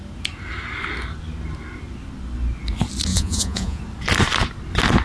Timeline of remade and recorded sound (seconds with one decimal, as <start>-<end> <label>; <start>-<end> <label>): 0.0-3.1 recorded; 3.1-3.8 remade; 3.8-5.0 recorded